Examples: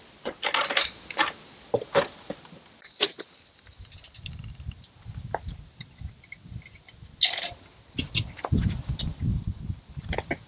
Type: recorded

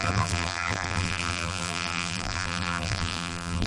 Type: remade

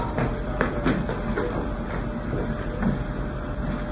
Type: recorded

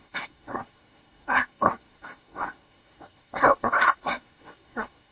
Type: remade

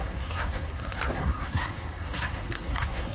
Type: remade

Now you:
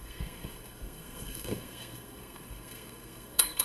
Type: remade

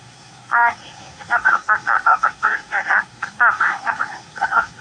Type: remade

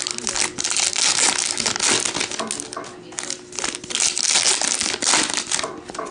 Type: recorded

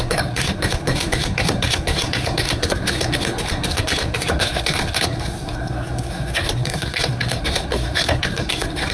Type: remade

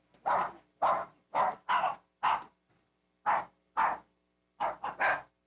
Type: recorded